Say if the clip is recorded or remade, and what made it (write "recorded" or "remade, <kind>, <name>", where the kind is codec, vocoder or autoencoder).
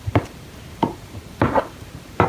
remade, vocoder, BigVGAN v2